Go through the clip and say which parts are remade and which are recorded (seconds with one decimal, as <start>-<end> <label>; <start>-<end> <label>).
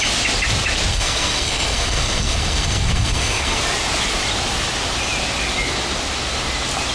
0.0-0.9 recorded; 0.9-3.6 remade; 3.6-6.9 recorded